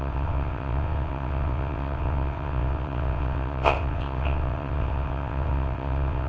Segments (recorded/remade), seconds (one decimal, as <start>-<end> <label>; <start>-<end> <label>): 0.0-6.3 remade